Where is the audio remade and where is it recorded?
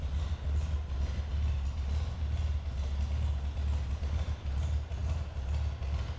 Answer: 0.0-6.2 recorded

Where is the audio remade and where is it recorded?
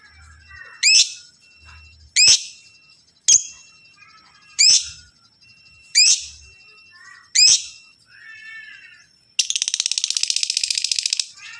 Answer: 0.0-3.6 recorded; 3.6-6.4 remade; 6.4-11.6 recorded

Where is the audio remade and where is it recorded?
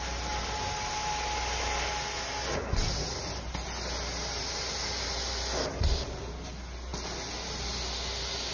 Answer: 0.0-8.5 recorded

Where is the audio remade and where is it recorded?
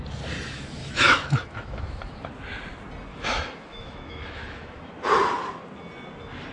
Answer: 0.0-0.8 recorded; 0.8-2.3 remade; 2.3-3.1 recorded; 3.1-4.9 remade; 4.9-6.5 recorded